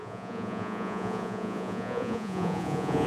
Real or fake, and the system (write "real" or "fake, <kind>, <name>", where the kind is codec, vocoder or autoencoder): fake, vocoder, Vocos